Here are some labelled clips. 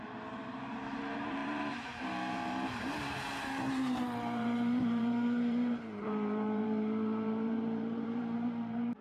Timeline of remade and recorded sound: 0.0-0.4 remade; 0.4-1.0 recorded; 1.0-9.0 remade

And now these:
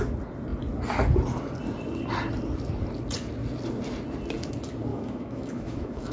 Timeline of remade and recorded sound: 0.0-4.9 recorded; 4.9-6.1 remade

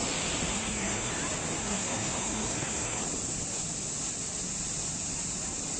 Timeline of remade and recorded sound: 0.0-0.5 recorded; 0.5-1.1 remade; 1.1-1.6 recorded; 1.6-3.0 remade; 3.0-5.8 recorded

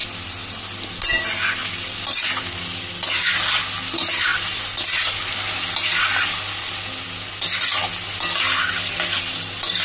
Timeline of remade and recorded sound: 0.0-9.8 recorded

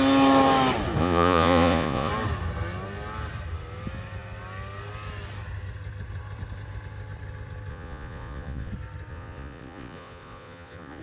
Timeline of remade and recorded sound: 0.0-1.0 recorded; 1.0-2.1 remade; 2.1-7.7 recorded; 7.7-8.7 remade; 8.7-9.1 recorded; 9.1-11.0 remade

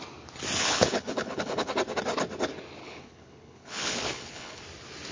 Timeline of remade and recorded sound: 0.0-0.6 recorded; 0.6-1.7 remade; 1.7-2.8 recorded; 2.8-4.6 remade; 4.6-5.1 recorded